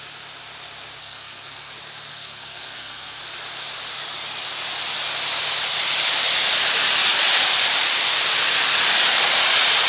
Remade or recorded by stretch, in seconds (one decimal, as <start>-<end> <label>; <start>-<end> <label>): 0.0-1.0 recorded; 1.0-1.7 remade; 1.7-2.1 recorded; 2.1-3.2 remade; 3.2-9.9 recorded